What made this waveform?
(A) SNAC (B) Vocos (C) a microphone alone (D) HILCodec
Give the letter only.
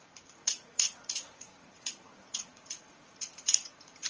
B